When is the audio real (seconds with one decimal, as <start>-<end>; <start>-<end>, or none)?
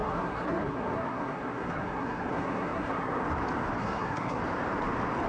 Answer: 3.2-3.8; 4.4-5.3